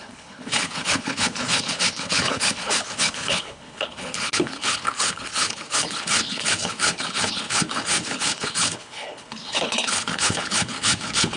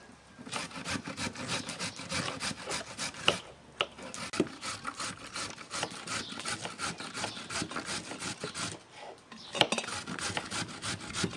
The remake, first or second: first